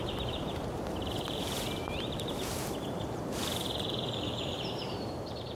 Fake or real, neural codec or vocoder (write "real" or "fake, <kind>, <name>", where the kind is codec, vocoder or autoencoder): fake, vocoder, BigVGAN v2